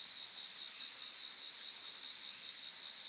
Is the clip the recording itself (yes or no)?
yes